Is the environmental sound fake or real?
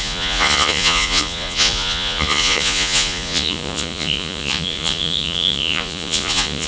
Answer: fake